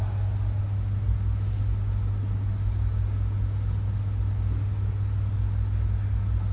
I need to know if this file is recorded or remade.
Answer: recorded